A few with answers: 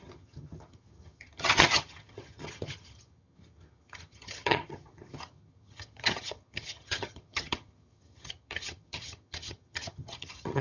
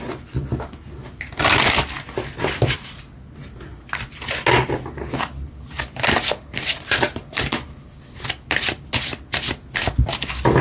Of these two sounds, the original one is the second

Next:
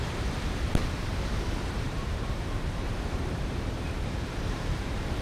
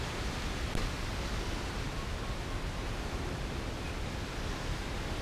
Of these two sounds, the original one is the second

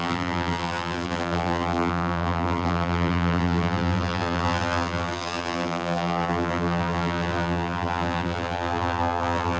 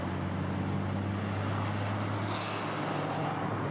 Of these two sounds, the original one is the second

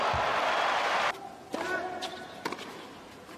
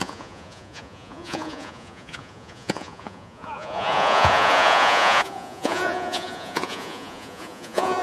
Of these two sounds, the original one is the first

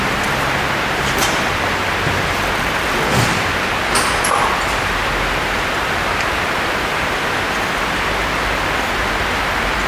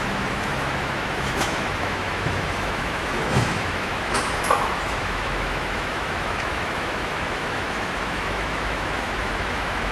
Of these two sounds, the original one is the first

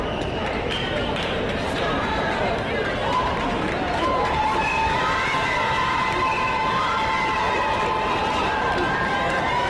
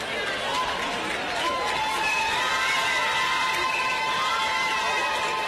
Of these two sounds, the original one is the second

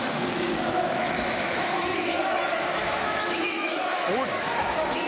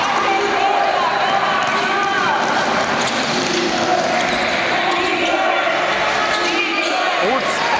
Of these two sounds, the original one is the second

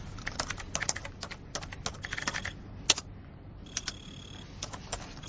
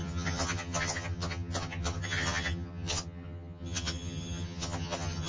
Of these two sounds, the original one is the first